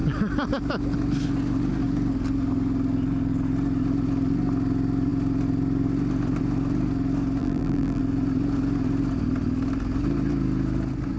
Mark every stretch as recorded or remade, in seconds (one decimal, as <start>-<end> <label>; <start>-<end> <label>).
0.0-7.4 recorded; 7.4-8.0 remade; 8.0-11.2 recorded